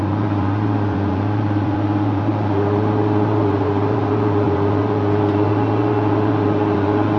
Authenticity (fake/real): fake